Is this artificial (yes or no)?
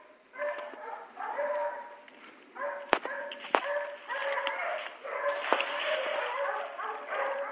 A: no